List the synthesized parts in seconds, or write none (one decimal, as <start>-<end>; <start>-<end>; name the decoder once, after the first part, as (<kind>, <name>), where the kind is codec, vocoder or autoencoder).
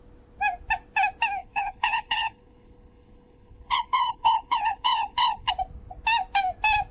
1.4-5.5 (codec, HILCodec)